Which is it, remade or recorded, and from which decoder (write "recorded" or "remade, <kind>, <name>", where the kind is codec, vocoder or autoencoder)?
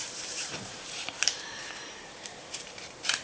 remade, vocoder, BigVGAN v2